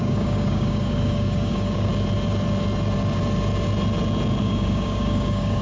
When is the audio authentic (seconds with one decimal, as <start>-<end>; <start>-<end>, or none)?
1.9-4.4